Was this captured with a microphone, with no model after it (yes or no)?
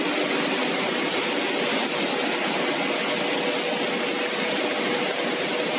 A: yes